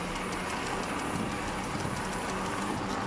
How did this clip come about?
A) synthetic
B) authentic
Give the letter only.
B